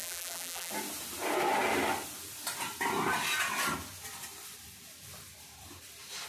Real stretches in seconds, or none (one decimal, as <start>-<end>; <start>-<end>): 0.7-6.3